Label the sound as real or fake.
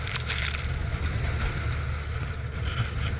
real